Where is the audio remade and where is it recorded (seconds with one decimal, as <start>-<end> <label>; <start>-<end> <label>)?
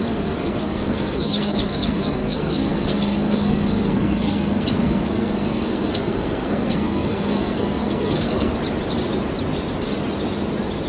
0.0-8.5 remade; 8.5-10.9 recorded